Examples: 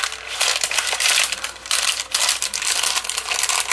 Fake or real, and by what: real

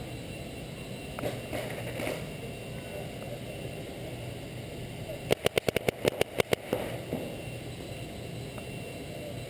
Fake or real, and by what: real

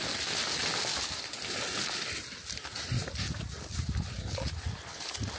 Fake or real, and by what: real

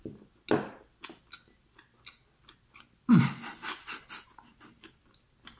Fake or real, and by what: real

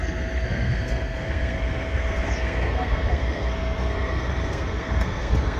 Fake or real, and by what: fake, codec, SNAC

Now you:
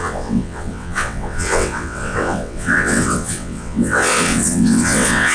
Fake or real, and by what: fake, vocoder, WaveNeXt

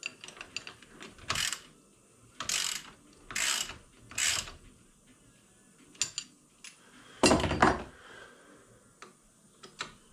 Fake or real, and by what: real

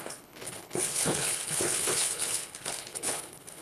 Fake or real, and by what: fake, codec, HILCodec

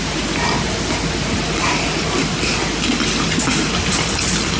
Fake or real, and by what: real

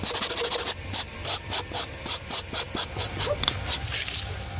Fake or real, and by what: real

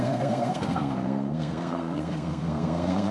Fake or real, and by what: fake, codec, SNAC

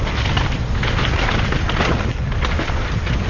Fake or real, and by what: real